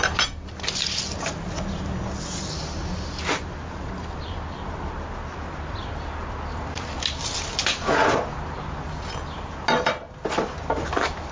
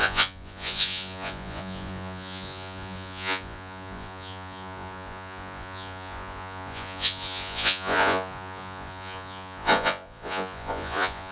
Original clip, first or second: first